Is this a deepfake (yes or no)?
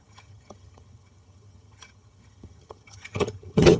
yes